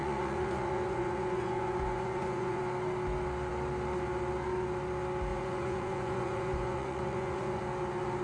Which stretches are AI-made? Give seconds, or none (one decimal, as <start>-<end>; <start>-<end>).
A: 0.0-2.6; 5.3-7.6